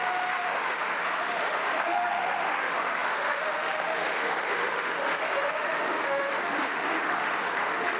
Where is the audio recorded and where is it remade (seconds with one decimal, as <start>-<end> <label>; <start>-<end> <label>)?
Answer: 0.0-8.0 remade